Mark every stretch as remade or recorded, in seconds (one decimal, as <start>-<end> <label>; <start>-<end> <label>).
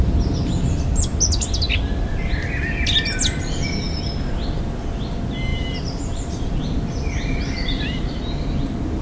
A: 0.0-5.5 recorded; 5.5-6.5 remade; 6.5-9.0 recorded